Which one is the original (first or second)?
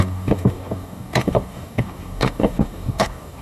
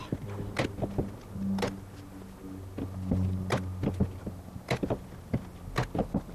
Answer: second